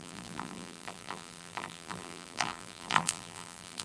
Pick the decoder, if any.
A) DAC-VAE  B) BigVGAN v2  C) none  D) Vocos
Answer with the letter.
B